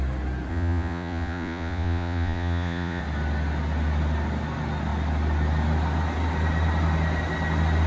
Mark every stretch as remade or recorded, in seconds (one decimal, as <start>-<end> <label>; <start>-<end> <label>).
0.0-0.5 recorded; 0.5-3.0 remade; 3.0-7.9 recorded